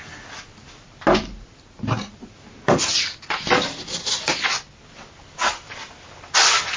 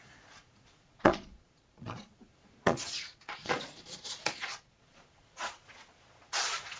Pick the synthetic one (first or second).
second